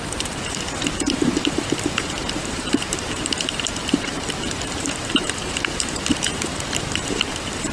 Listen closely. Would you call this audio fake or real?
fake